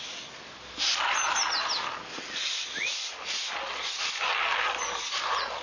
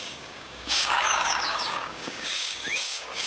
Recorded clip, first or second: first